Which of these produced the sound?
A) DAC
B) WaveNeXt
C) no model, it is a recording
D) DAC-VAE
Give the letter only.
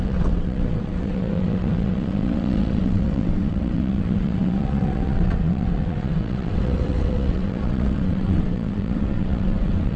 B